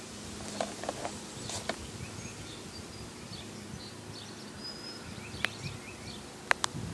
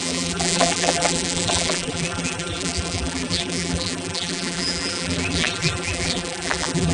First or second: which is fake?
second